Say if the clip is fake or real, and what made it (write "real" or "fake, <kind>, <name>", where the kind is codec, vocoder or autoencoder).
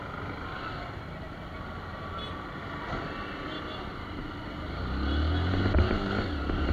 real